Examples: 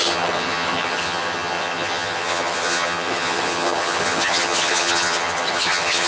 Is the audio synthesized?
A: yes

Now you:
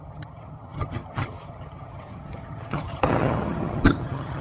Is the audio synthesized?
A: yes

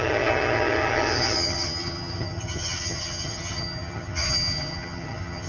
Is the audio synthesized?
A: yes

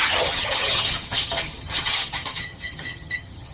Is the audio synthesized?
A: yes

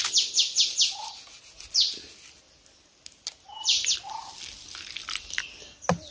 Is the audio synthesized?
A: no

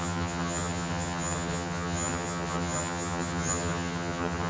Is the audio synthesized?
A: yes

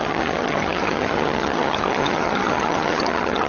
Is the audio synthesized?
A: yes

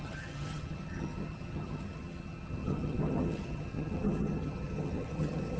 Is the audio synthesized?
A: yes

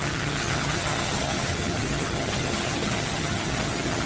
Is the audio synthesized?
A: yes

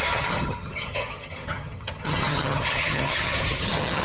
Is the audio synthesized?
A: yes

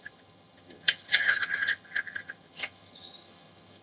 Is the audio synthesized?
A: yes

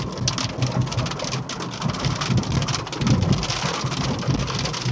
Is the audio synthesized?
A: no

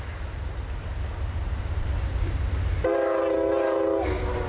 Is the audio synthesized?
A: no